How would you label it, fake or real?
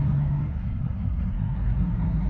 fake